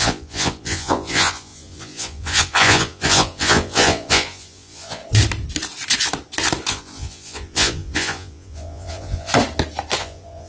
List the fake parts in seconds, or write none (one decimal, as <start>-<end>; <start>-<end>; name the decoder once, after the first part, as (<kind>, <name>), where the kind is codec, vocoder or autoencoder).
0.0-5.0 (vocoder, Vocos); 6.7-9.3; 10.0-10.5